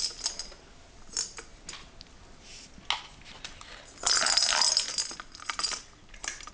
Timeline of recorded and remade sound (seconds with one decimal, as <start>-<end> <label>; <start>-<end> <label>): 0.0-6.5 recorded